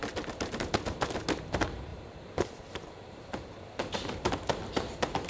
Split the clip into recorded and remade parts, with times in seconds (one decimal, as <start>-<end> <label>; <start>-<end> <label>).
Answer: 0.0-1.9 recorded; 1.9-4.3 remade; 4.3-5.3 recorded